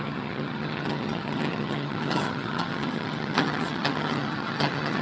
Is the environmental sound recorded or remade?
remade